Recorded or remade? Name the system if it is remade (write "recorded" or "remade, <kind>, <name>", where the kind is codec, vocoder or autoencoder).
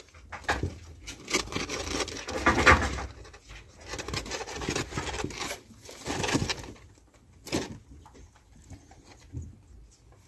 recorded